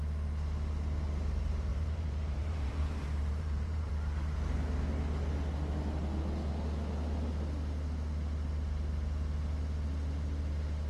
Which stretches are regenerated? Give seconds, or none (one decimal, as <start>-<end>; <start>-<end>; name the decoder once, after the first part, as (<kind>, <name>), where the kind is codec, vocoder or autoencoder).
1.7-3.9 (vocoder, BigVGAN v2)